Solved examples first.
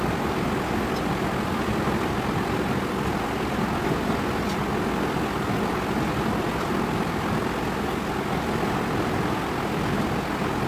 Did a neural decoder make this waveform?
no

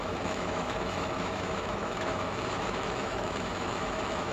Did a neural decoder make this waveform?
yes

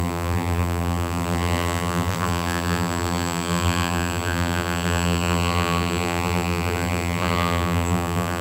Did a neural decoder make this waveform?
yes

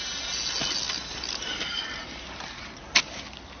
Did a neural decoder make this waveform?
no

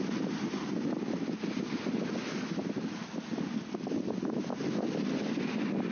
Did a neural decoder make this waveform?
no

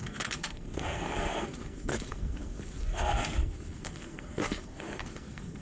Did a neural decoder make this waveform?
yes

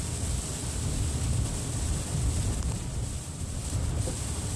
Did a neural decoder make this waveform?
yes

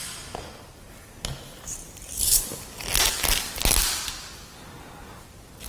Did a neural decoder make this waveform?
no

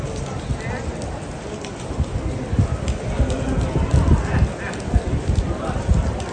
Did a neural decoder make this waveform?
no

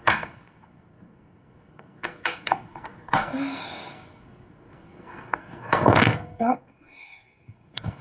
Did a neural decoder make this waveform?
yes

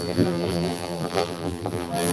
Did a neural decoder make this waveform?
yes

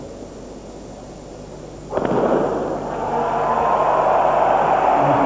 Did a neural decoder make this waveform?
no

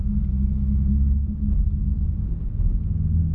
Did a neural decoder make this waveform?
no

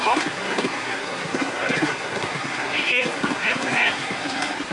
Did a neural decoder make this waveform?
yes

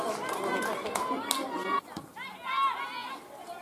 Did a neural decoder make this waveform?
no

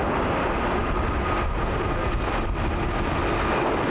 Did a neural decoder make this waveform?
no